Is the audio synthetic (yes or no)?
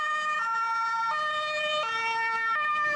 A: no